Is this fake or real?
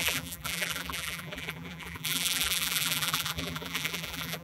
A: fake